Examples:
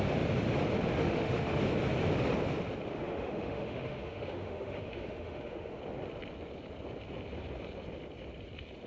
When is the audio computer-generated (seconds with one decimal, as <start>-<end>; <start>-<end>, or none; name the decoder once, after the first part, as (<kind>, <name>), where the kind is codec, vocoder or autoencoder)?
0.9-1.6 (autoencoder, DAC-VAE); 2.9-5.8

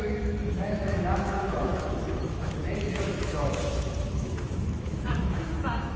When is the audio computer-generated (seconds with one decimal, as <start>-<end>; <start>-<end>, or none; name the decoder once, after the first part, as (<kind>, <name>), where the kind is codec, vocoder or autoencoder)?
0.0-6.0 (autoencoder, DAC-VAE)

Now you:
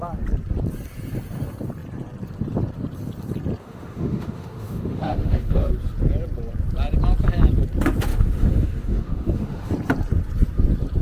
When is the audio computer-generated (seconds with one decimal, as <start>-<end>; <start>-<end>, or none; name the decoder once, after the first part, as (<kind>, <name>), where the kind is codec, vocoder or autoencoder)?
3.6-5.7 (autoencoder, DAC-VAE); 8.1-9.7

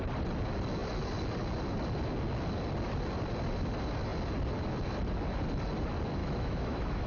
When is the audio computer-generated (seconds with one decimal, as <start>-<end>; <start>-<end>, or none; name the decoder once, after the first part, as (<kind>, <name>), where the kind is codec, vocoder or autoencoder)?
6.2-7.1 (autoencoder, DAC-VAE)

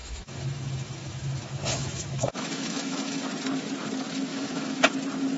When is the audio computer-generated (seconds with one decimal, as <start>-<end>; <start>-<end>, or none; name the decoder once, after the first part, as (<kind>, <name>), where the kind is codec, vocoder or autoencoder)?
0.0-3.2 (autoencoder, DAC-VAE); 4.3-4.8